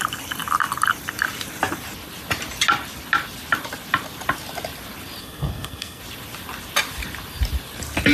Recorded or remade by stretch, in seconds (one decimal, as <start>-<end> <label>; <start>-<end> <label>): 0.0-5.2 recorded; 5.2-6.0 remade; 6.0-8.1 recorded